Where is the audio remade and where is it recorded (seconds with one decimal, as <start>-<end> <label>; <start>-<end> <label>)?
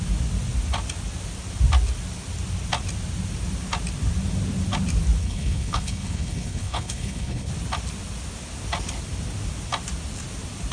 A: 0.0-5.2 recorded; 5.2-7.5 remade; 7.5-10.7 recorded